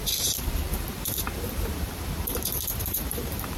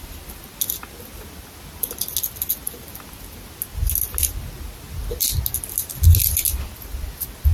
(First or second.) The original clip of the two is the second